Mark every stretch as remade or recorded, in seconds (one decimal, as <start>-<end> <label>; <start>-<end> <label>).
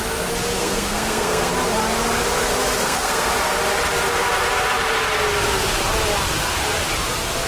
0.0-0.6 recorded; 0.6-1.5 remade; 1.5-2.8 recorded; 2.8-3.3 remade; 3.3-7.5 recorded